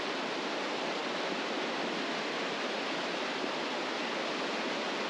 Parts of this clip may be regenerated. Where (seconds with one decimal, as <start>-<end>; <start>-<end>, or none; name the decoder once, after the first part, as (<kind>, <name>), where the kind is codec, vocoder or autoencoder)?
none